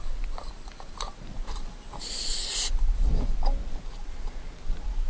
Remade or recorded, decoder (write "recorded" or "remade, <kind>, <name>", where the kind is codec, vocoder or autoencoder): recorded